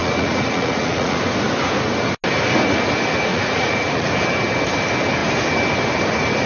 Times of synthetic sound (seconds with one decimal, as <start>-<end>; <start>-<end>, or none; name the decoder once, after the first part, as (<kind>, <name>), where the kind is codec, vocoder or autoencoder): 0.0-1.2 (vocoder, Vocos); 3.3-4.1